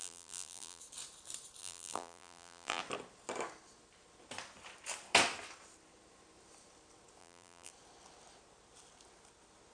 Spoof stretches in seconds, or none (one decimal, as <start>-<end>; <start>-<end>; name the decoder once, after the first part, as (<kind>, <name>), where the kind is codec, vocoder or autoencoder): 0.0-0.8 (vocoder, BigVGAN v2); 1.6-2.8; 7.2-7.7